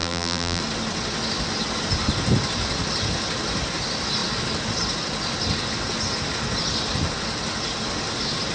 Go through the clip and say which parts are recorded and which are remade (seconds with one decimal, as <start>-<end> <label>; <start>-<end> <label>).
0.0-0.6 remade; 0.6-8.5 recorded